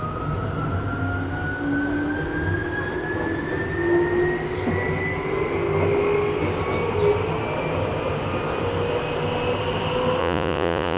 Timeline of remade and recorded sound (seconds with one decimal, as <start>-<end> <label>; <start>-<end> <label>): 0.0-10.2 recorded; 10.2-11.0 remade